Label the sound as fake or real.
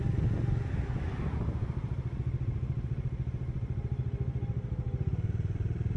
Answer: real